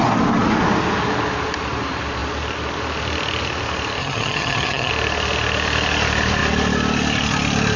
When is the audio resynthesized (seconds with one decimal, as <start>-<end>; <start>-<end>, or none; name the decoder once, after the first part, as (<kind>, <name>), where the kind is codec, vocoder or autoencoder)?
4.0-4.9 (vocoder, HiFi-GAN)